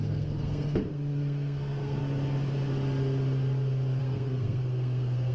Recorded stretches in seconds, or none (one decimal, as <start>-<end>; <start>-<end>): 2.0-4.0